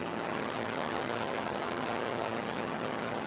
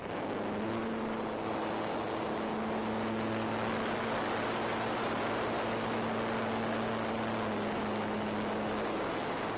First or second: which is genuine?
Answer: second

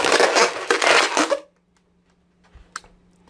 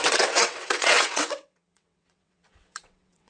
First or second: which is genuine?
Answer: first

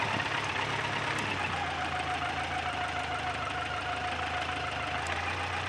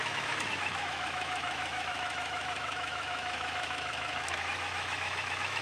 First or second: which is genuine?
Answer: first